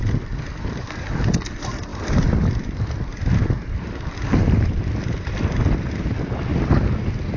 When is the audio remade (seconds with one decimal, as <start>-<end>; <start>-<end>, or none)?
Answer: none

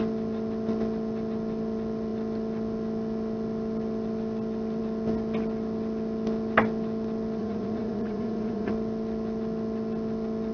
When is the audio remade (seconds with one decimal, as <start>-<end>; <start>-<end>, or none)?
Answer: 7.4-8.7

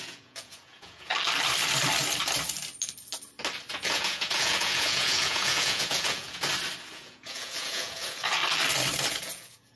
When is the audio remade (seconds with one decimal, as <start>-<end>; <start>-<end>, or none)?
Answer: 0.0-1.1; 3.7-6.4; 6.9-8.4; 9.1-9.7

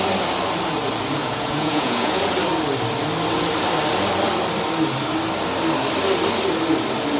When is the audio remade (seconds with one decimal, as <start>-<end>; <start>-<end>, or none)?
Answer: 1.2-2.2

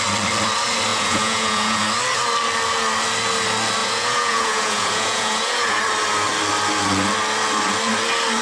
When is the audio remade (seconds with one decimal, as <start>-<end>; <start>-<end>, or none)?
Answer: 0.9-1.8; 3.8-5.8

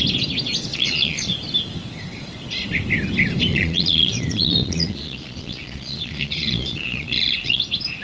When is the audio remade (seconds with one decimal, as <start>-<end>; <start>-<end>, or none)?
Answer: 0.7-1.3; 3.5-7.6

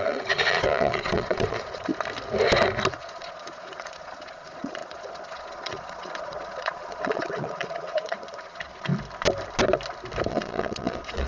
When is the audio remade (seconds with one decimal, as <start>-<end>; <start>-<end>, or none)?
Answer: 0.0-1.9; 2.9-8.9; 10.3-11.3